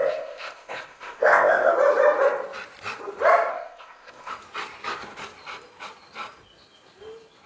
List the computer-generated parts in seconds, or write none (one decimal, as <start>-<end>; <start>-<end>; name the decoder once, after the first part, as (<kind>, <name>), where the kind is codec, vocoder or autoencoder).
0.0-1.7 (codec, ZipCodec); 3.5-4.3